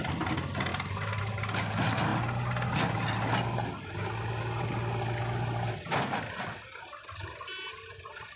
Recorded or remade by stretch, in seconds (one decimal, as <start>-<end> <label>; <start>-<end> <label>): 0.0-8.4 recorded